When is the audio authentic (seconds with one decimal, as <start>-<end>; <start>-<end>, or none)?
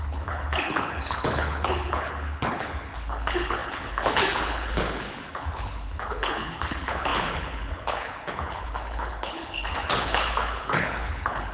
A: none